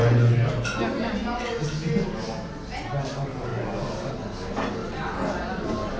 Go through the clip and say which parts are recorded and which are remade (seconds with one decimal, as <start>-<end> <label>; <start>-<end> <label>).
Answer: 0.0-6.0 recorded